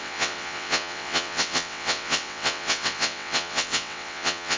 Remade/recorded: remade